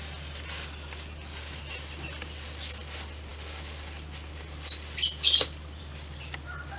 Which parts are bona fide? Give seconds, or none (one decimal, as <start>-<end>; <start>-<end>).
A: 0.0-6.8